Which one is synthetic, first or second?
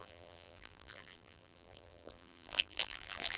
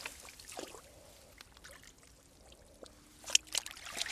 first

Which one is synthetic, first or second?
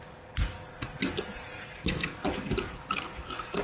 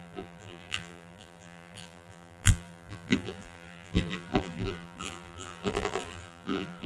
second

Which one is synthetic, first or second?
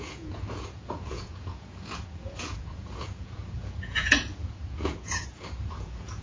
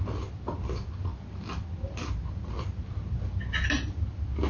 first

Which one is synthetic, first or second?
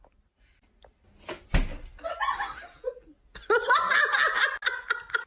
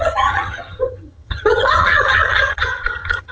second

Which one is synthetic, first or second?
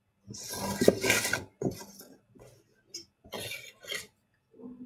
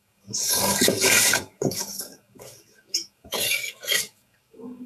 second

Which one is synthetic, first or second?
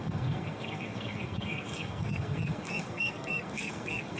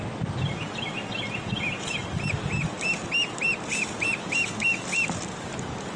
first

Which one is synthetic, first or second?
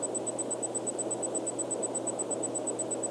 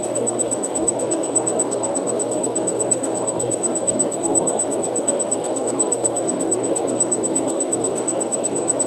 second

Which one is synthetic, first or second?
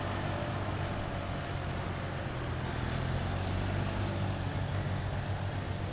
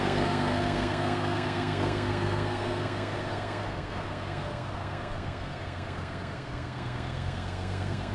second